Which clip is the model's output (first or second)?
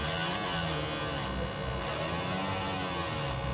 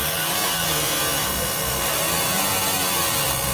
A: second